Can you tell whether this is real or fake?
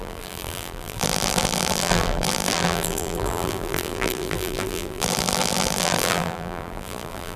fake